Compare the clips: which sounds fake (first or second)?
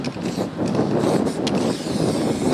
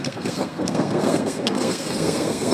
second